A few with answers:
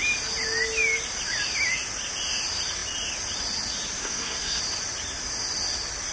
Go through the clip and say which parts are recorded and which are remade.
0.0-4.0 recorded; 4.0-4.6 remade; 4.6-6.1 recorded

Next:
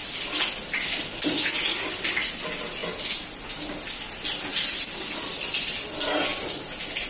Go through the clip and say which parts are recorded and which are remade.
0.0-7.1 recorded

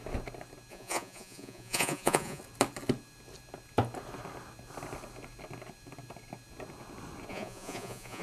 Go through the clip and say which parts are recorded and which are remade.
0.0-0.7 recorded; 0.7-2.4 remade; 2.4-7.3 recorded; 7.3-8.2 remade